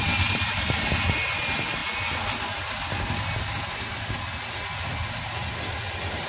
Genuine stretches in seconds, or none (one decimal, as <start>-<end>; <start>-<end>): 0.0-6.3